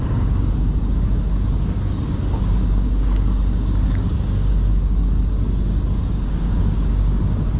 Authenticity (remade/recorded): remade